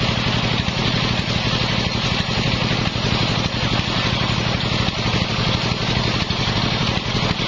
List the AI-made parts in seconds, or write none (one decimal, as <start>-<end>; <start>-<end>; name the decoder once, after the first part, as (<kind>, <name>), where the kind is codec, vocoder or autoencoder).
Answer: none